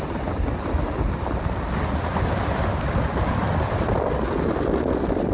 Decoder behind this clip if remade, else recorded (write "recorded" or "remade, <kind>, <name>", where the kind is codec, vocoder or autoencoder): recorded